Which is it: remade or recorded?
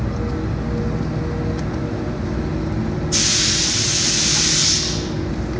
recorded